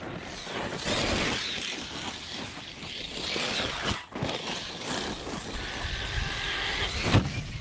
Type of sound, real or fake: real